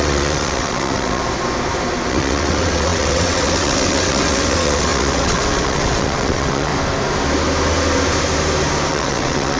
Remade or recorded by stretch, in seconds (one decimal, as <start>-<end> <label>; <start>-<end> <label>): 0.0-1.2 remade; 1.2-2.1 recorded; 2.1-6.7 remade; 6.7-8.9 recorded; 8.9-9.6 remade